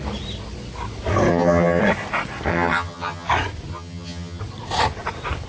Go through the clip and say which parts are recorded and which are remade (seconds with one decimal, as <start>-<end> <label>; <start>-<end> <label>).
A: 0.0-1.3 recorded; 1.3-1.8 remade; 1.8-2.5 recorded; 2.5-3.3 remade; 3.3-3.7 recorded; 3.7-4.4 remade; 4.4-5.5 recorded